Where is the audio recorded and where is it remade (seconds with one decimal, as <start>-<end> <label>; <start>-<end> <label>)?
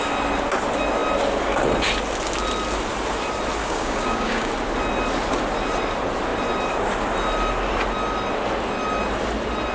0.0-3.6 recorded; 3.6-4.5 remade; 4.5-9.7 recorded